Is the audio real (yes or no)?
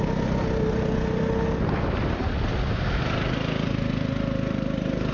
yes